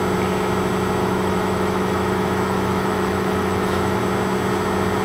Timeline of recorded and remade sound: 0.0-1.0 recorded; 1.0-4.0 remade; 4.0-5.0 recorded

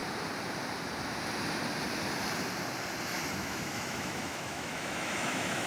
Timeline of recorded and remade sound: 0.0-3.3 recorded; 3.3-5.7 remade

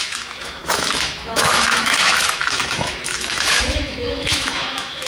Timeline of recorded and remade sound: 0.0-5.1 remade